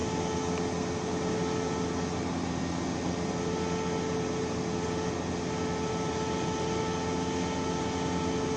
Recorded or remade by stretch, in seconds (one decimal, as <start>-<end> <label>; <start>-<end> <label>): 0.0-8.6 recorded